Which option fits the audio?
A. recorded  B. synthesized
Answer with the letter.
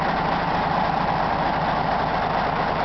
A